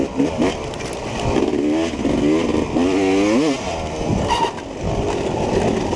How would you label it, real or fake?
real